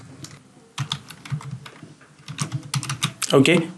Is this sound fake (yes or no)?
no